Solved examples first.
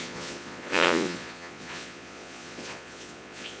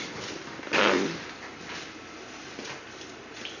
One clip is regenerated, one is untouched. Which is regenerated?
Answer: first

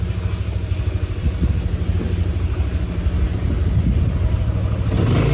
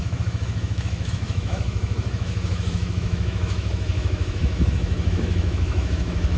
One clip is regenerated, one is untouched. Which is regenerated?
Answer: second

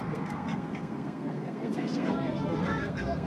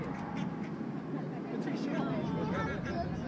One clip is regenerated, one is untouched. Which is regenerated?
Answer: first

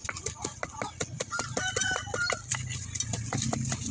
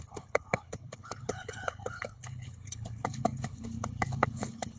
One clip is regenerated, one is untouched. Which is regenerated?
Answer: second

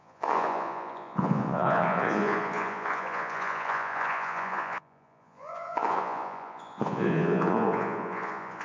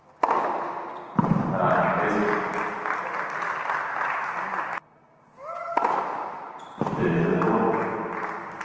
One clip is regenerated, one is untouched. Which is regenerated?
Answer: first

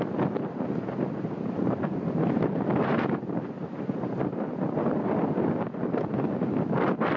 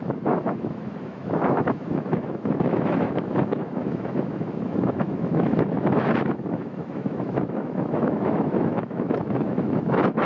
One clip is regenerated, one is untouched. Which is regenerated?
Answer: second